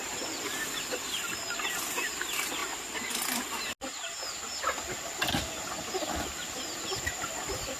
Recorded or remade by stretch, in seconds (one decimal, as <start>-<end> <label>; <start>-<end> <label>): 0.0-7.8 recorded